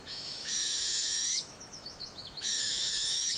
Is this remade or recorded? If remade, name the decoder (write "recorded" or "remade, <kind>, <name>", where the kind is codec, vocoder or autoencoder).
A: remade, autoencoder, DAC-VAE